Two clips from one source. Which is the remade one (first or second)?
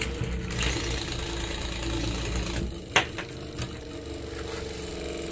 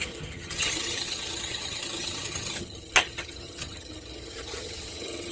second